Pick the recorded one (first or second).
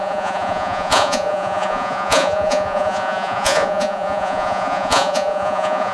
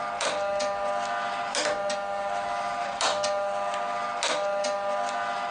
second